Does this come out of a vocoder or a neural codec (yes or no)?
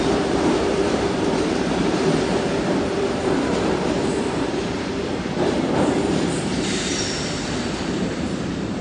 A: yes